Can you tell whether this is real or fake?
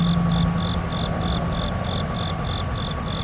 real